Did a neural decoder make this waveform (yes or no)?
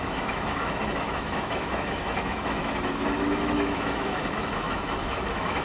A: yes